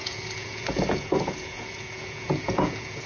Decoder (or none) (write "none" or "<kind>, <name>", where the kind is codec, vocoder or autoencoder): vocoder, Vocos